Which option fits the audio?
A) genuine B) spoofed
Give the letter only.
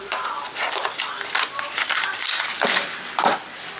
A